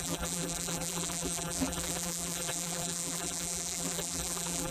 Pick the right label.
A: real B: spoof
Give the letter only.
B